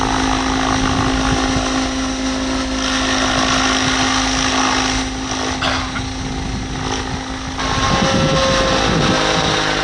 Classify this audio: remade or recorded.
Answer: recorded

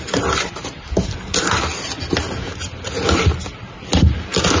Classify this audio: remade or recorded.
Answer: recorded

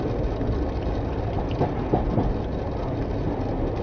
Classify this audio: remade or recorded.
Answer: recorded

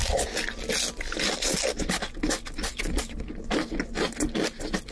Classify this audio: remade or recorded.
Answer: recorded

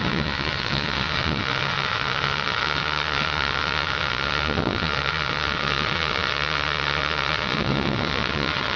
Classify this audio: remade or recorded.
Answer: remade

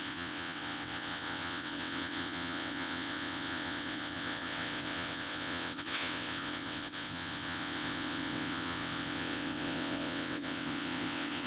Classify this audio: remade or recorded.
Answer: remade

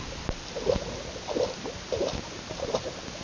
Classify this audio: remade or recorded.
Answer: recorded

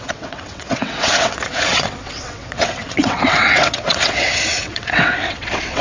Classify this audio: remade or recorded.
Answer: remade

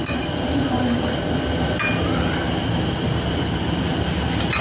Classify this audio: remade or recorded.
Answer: recorded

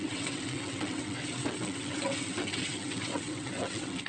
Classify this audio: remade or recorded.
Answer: remade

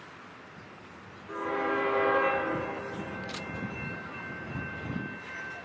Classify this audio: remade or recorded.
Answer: recorded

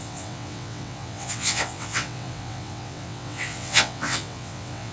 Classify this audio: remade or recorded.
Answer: remade